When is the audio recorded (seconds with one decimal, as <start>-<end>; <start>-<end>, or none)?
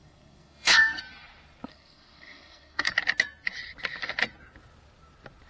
1.0-1.7; 2.9-5.5